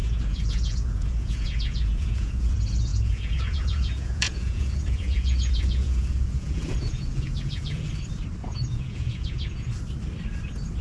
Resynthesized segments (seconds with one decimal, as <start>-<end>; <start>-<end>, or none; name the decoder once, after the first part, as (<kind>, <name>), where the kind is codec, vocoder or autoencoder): 0.0-2.5 (vocoder, Vocos); 2.9-7.9; 8.4-9.7